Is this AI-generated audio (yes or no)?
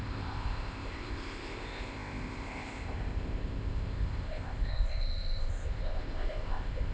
yes